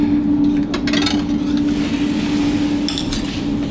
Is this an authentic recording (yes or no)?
yes